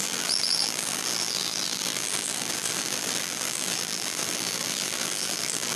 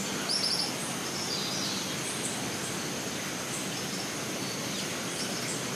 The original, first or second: second